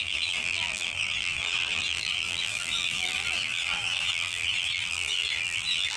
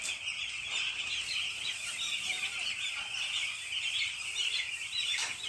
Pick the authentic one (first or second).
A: second